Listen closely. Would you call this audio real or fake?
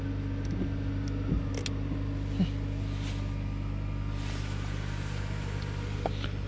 real